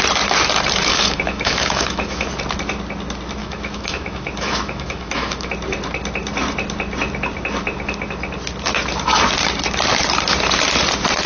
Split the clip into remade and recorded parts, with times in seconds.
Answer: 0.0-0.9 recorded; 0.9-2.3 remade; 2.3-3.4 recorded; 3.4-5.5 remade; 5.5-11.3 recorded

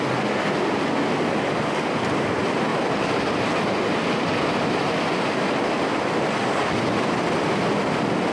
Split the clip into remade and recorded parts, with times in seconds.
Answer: 0.0-8.3 recorded

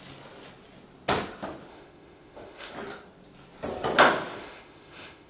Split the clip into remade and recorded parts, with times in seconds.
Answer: 0.0-1.7 recorded; 1.7-2.7 remade; 2.7-4.3 recorded; 4.3-5.3 remade

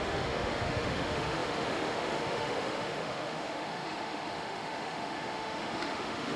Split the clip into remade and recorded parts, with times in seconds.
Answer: 0.0-6.4 remade

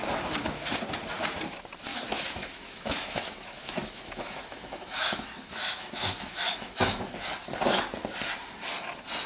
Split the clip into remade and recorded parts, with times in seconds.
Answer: 0.0-1.9 recorded; 1.9-7.0 remade; 7.0-9.3 recorded